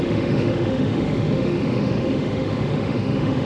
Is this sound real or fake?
fake